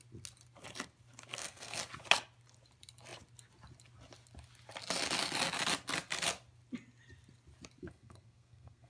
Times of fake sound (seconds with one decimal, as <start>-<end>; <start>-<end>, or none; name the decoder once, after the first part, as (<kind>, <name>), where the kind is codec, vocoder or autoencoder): 1.3-1.8 (codec, SNAC); 7.8-8.9